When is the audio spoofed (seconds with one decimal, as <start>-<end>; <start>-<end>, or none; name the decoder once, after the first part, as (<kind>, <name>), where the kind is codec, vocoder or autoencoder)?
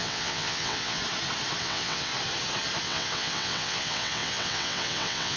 0.0-1.0 (vocoder, WaveNeXt); 1.6-2.1; 2.8-5.4